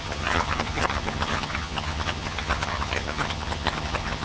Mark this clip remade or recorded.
remade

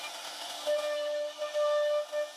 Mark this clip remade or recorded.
recorded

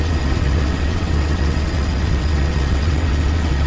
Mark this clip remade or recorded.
remade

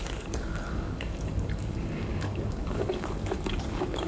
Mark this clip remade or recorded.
remade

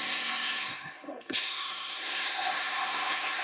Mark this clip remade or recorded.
remade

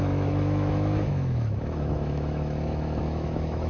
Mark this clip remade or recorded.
remade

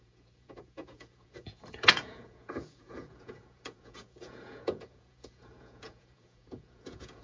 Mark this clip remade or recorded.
remade